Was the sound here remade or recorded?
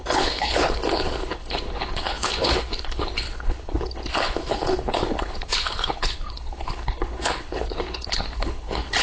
remade